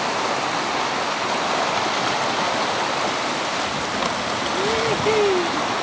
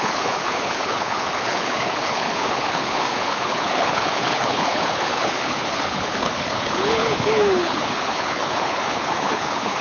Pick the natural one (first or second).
first